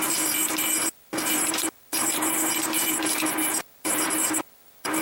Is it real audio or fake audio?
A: fake